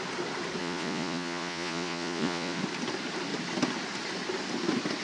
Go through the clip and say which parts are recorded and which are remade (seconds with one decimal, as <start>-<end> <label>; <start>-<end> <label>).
0.0-0.6 recorded; 0.6-2.6 remade; 2.6-5.0 recorded

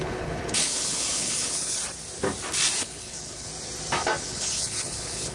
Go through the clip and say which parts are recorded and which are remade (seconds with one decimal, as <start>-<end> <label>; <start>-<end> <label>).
0.0-1.8 remade; 1.8-2.8 recorded; 2.8-3.5 remade; 3.5-4.2 recorded; 4.2-5.3 remade